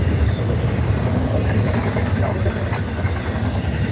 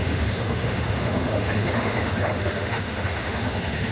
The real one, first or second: first